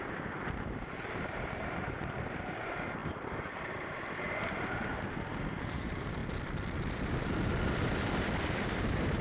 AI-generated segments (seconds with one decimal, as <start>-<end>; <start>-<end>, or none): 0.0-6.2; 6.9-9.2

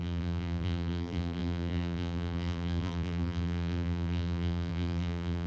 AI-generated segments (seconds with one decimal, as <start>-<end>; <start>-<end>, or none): 0.0-5.5

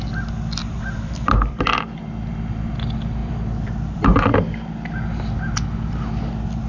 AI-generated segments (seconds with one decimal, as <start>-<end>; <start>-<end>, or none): 0.6-2.0; 3.2-4.0

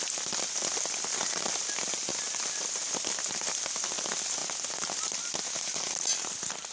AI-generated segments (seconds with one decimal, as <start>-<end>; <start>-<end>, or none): 0.0-2.1; 2.6-4.4; 5.0-6.7

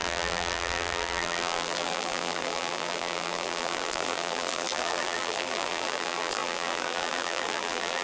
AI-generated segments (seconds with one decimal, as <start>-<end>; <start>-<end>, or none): 0.0-8.0

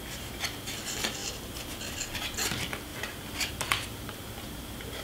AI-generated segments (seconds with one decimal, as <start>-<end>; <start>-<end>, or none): 2.9-3.5

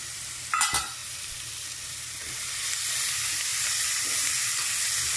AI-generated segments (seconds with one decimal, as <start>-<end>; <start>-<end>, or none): 1.0-3.1; 3.5-4.3